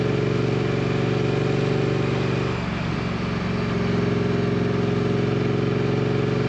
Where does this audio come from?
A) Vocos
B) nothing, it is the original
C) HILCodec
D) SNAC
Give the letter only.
B